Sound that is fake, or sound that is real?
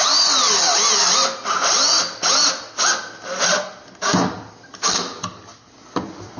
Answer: real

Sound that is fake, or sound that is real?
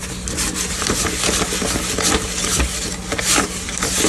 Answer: real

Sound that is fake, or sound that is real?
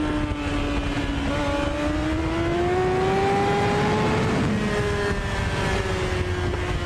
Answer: real